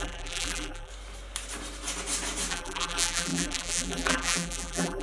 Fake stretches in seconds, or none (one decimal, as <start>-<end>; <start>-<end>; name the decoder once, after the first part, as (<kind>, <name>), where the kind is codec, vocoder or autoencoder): 0.0-0.9 (vocoder, BigVGAN v2); 2.5-5.0